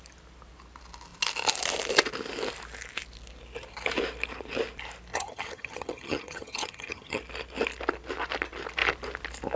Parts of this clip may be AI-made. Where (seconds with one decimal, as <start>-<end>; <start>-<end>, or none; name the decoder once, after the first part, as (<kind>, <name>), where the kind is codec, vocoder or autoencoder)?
5.1-7.2 (vocoder, HiFi-GAN)